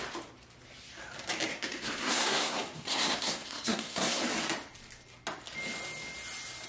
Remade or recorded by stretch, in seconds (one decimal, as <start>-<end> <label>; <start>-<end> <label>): 0.0-1.5 recorded; 1.5-4.2 remade; 4.2-6.7 recorded